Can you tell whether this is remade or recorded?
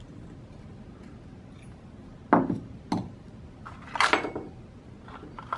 recorded